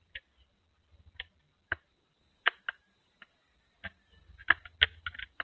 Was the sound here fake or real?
real